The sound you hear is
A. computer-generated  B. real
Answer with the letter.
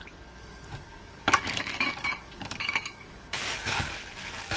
A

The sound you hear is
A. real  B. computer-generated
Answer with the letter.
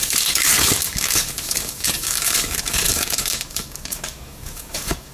B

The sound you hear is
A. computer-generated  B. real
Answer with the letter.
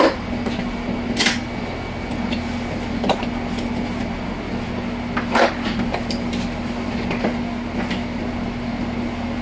B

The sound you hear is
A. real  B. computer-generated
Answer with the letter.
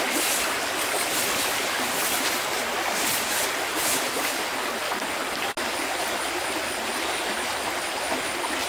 A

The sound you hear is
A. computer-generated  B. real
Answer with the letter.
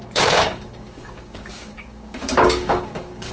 A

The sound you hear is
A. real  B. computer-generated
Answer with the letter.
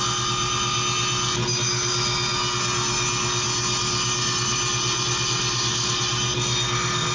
A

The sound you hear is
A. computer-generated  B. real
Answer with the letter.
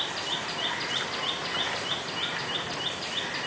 B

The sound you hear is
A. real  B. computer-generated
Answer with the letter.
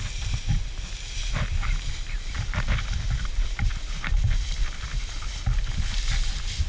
A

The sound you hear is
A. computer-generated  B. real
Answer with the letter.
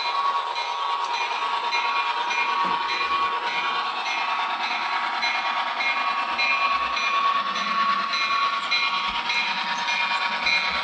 B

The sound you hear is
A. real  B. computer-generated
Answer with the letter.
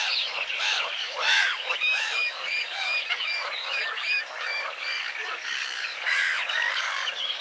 B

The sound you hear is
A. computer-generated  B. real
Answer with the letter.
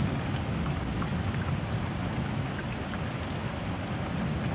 B